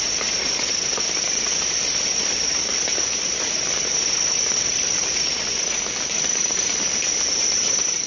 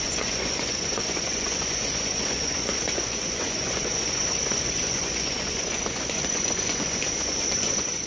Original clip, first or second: first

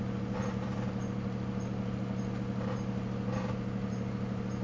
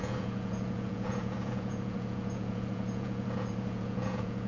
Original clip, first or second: first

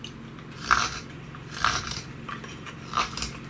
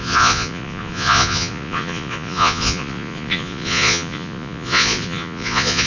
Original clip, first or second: first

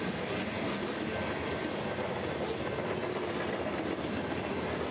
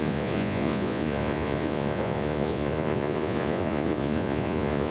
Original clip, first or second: first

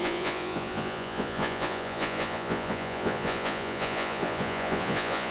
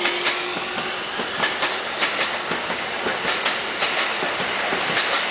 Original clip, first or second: second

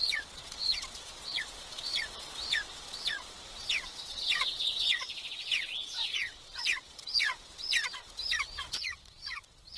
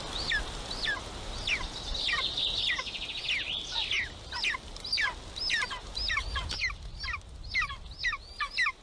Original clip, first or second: second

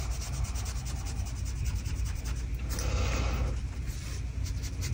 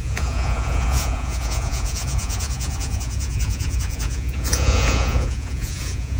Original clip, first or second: first